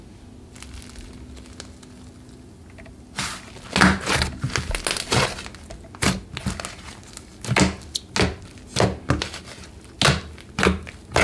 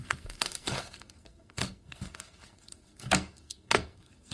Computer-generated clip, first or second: second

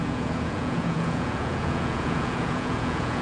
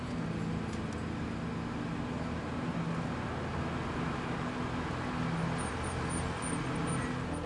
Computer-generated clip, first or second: first